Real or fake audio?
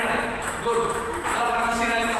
fake